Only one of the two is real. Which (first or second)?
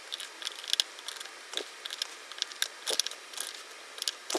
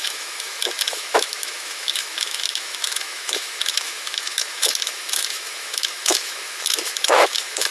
first